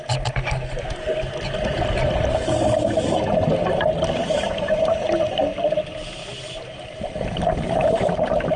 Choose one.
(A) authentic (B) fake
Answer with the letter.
A